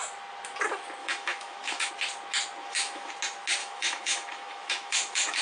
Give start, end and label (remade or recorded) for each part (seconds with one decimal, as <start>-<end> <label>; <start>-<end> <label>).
0.0-1.0 recorded; 1.0-1.9 remade; 1.9-2.6 recorded; 2.6-3.1 remade; 3.1-3.6 recorded; 3.6-5.4 remade

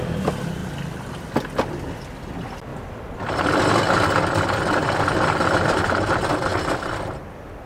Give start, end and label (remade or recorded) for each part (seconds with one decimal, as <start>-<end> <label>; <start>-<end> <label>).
0.0-7.7 recorded

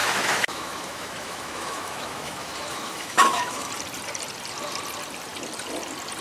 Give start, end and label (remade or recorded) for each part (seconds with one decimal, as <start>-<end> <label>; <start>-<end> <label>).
0.0-3.7 remade; 3.7-6.2 recorded

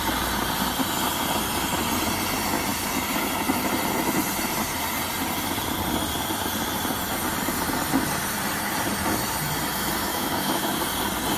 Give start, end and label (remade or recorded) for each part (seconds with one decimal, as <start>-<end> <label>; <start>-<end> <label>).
0.0-10.1 recorded; 10.1-10.8 remade; 10.8-11.4 recorded

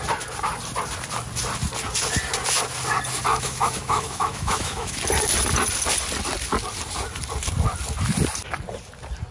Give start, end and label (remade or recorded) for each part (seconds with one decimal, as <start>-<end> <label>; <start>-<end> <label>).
0.0-3.3 recorded; 3.3-5.0 remade; 5.0-9.3 recorded

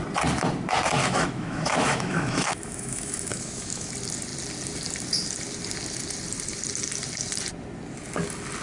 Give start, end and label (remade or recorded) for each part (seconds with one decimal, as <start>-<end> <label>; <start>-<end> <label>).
0.0-1.0 recorded; 1.0-3.9 remade; 3.9-8.6 recorded

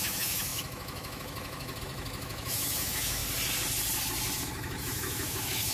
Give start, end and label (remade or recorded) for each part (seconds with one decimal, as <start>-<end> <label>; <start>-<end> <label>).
0.0-3.2 remade; 3.2-4.4 recorded; 4.4-5.7 remade

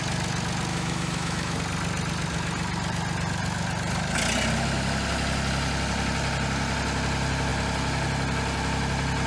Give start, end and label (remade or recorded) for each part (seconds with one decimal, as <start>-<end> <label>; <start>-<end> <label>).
0.0-0.7 recorded; 0.7-1.6 remade; 1.6-9.3 recorded